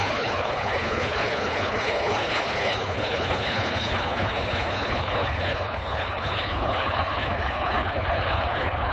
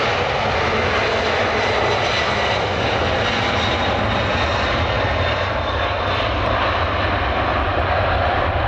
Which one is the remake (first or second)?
first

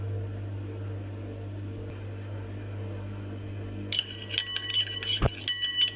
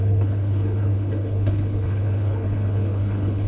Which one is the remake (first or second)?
second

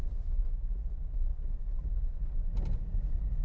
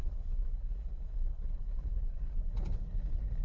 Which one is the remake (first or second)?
second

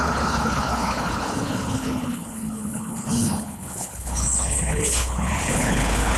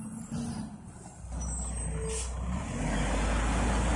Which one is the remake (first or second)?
first